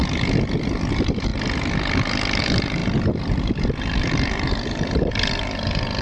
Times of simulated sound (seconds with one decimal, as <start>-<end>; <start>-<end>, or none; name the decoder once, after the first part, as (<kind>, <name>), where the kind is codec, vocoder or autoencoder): 0.9-1.3 (vocoder, BigVGAN v2); 2.4-6.0